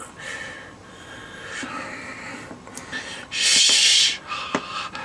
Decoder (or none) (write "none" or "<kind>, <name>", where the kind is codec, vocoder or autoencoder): none